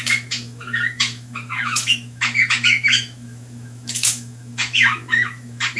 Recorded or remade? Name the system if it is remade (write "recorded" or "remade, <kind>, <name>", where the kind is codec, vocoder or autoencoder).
remade, autoencoder, DAC-VAE